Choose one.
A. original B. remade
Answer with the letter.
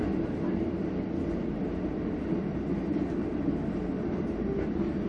A